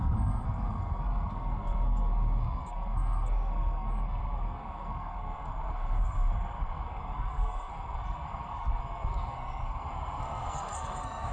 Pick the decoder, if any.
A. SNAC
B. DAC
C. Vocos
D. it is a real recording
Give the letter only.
A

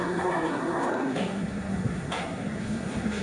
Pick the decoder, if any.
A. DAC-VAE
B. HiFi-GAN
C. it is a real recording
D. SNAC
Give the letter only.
D